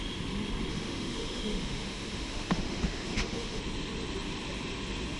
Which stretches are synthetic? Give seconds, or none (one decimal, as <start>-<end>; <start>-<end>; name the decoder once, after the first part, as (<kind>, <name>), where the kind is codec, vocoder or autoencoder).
0.7-3.6 (autoencoder, DAC-VAE)